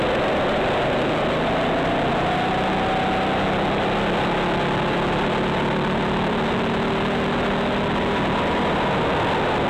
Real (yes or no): yes